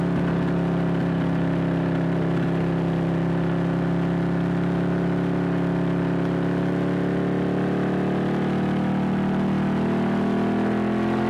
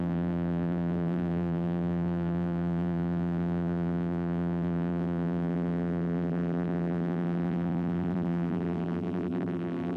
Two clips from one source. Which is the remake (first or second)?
second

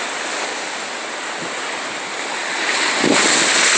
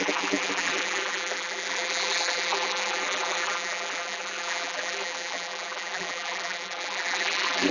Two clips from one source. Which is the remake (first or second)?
second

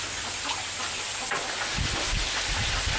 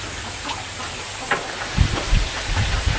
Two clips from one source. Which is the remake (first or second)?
second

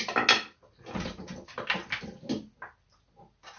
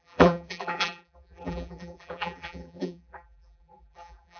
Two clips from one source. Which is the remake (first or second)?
second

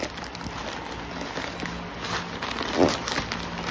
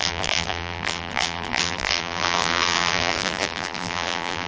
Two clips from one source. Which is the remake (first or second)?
second